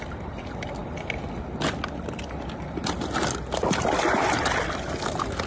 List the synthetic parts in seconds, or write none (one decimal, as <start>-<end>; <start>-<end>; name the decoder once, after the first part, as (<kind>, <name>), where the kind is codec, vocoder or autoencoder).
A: none